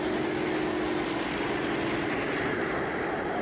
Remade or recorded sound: recorded